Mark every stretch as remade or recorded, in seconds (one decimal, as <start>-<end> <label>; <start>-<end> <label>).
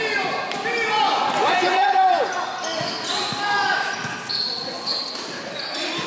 0.0-1.4 recorded; 1.4-2.3 remade; 2.3-6.1 recorded